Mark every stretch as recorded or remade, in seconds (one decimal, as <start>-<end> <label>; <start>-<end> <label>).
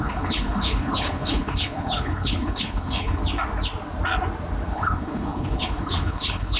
0.0-3.2 remade; 3.2-4.7 recorded; 4.7-6.6 remade